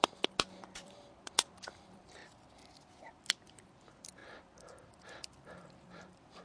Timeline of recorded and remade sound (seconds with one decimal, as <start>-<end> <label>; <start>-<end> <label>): 0.0-2.2 remade; 2.2-3.4 recorded; 3.4-6.4 remade